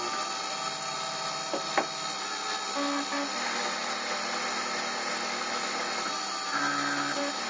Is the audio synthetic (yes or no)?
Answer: no